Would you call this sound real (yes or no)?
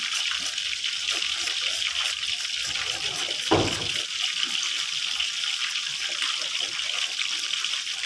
yes